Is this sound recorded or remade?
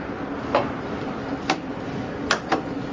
recorded